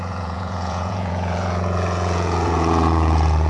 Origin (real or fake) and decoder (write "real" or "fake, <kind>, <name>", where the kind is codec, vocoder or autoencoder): fake, vocoder, Vocos